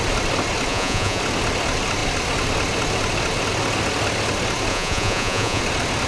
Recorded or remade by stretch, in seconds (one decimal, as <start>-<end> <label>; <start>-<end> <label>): 0.0-0.7 recorded; 0.7-1.2 remade; 1.2-4.7 recorded; 4.7-5.6 remade; 5.6-6.1 recorded